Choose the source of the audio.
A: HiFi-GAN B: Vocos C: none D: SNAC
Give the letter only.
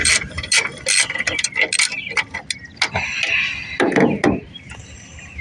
C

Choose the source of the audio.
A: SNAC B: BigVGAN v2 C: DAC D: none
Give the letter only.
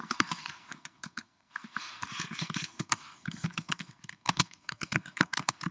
A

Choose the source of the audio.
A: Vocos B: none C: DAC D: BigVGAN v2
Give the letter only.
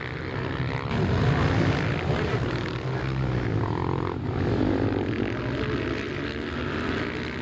B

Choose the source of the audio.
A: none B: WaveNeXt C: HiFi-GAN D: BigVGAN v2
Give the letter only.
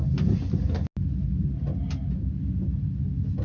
A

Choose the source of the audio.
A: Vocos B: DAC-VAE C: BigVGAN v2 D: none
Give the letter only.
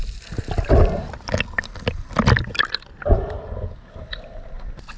D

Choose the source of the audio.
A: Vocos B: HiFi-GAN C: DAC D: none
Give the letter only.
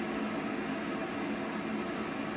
D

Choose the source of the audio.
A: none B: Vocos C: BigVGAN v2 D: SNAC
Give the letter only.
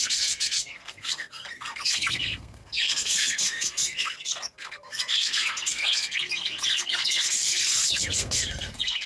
D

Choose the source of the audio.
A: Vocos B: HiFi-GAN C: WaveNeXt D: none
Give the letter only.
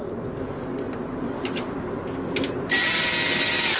D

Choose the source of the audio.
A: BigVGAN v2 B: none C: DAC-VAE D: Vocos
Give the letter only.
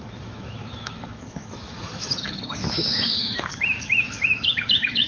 C